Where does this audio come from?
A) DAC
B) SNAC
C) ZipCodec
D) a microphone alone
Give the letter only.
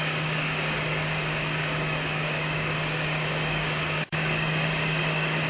A